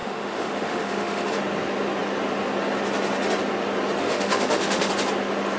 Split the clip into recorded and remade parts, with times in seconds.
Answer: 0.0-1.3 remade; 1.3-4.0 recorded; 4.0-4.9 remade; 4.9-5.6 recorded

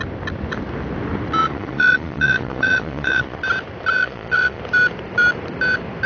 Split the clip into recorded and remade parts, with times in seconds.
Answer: 0.0-1.4 recorded; 1.4-3.4 remade; 3.4-4.0 recorded; 4.0-4.6 remade; 4.6-6.1 recorded